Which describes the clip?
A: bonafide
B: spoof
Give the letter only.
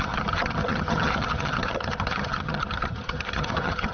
B